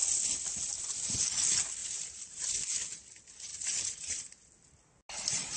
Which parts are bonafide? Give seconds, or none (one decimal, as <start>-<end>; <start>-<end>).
0.0-1.8; 2.5-3.5; 4.5-5.6